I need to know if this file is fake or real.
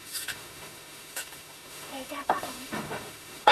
fake